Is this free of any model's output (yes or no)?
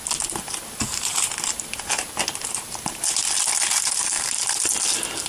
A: yes